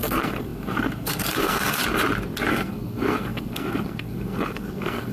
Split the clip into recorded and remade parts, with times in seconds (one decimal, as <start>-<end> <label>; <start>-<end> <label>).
0.0-1.8 remade; 1.8-2.5 recorded; 2.5-5.1 remade

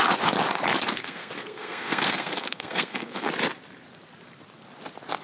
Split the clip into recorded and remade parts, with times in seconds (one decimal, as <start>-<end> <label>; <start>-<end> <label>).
0.0-0.9 recorded; 0.9-3.3 remade; 3.3-5.2 recorded

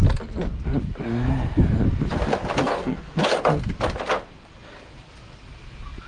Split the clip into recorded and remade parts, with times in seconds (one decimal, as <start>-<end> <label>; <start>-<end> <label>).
0.0-2.6 recorded; 2.6-3.2 remade; 3.2-6.1 recorded

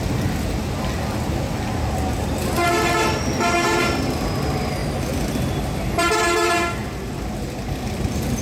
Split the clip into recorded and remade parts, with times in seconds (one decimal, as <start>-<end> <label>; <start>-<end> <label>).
0.0-8.4 recorded